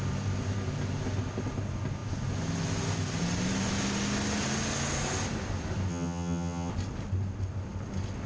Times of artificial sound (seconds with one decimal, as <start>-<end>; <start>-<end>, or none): 5.9-6.7